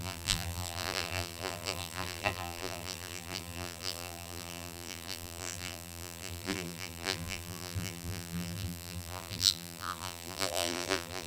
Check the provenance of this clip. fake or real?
fake